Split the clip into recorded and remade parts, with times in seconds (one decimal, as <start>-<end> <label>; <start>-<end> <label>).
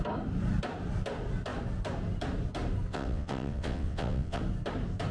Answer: 0.0-2.9 recorded; 2.9-4.4 remade; 4.4-5.1 recorded